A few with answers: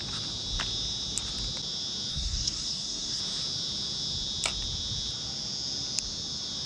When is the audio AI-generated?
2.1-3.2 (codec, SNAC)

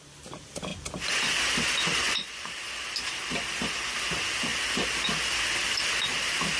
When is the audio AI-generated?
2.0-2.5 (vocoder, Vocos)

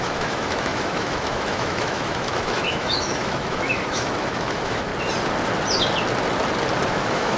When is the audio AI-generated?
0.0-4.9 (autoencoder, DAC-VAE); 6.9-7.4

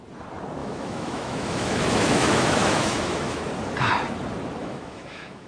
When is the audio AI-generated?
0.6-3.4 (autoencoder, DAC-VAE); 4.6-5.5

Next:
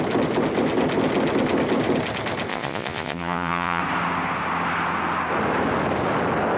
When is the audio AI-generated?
2.5-3.8 (vocoder, Vocos)

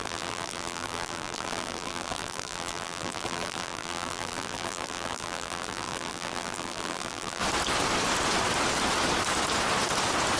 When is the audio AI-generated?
0.0-7.4 (vocoder, BigVGAN v2)

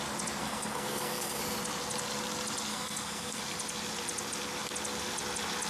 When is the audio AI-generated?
0.4-1.4 (codec, SNAC); 2.7-3.4